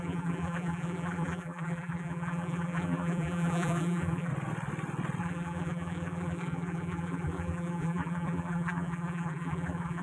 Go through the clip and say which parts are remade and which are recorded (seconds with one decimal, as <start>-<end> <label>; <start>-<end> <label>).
0.0-4.3 remade; 4.3-5.2 recorded; 5.2-10.0 remade